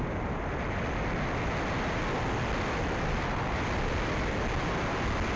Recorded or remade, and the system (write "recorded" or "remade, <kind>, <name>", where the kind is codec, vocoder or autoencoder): recorded